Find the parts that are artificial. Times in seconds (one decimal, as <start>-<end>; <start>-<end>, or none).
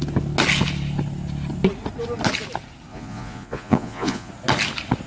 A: 2.9-4.3